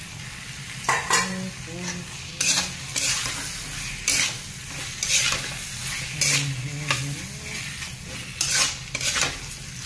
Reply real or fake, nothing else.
real